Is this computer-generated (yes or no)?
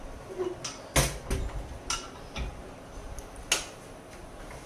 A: no